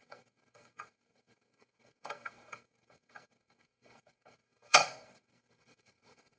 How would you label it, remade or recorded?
remade